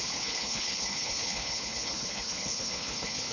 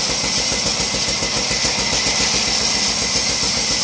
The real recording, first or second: second